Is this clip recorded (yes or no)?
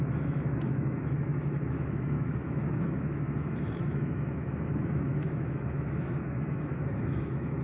no